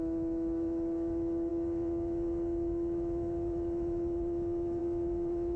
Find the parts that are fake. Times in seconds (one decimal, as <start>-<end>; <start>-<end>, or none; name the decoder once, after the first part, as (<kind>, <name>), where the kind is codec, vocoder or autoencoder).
0.0-5.6 (autoencoder, DAC-VAE)